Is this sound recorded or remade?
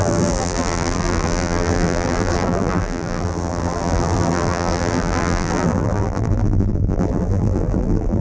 remade